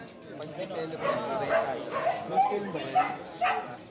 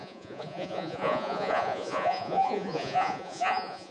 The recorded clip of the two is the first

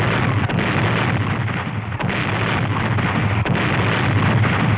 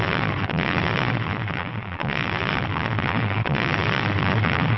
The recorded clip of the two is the first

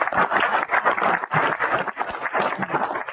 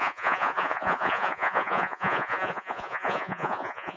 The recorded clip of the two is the first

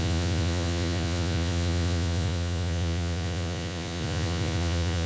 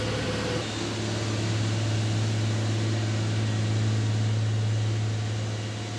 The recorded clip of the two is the second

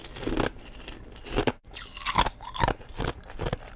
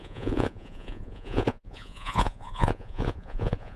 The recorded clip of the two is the first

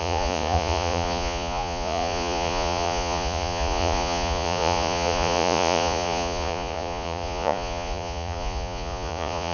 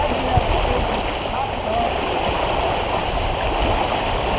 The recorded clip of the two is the second